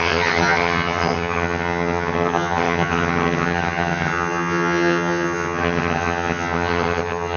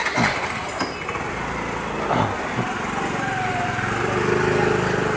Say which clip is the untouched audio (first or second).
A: second